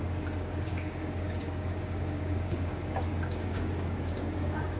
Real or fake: fake